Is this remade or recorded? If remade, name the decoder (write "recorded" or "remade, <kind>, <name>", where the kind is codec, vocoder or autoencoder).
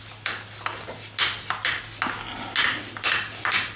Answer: recorded